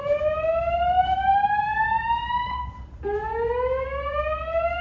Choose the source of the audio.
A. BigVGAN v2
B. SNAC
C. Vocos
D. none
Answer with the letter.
D